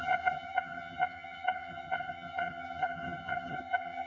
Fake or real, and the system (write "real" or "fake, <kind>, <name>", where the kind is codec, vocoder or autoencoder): fake, vocoder, HiFi-GAN